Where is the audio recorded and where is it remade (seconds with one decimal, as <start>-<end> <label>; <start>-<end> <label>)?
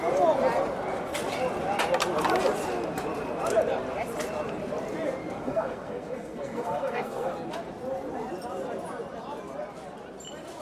0.0-5.4 recorded; 5.4-7.3 remade; 7.3-10.6 recorded